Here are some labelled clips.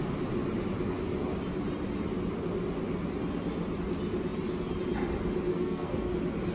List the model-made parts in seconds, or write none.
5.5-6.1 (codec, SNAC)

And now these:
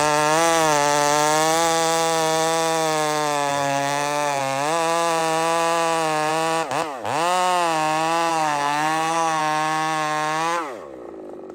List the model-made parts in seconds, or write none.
3.5-4.4 (codec, SNAC); 8.3-9.4

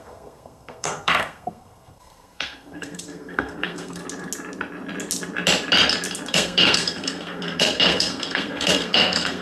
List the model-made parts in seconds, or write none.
0.0-4.0 (codec, SNAC); 6.3-9.4

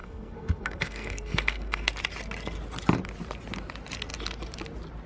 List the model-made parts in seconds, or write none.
0.0-1.9 (codec, SNAC)